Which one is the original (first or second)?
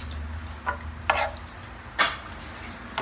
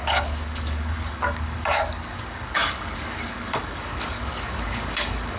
first